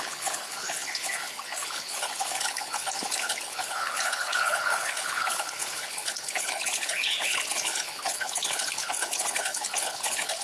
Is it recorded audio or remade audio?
remade